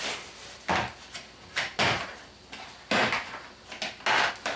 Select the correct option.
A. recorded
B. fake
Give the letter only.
A